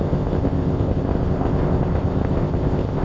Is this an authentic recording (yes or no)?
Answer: no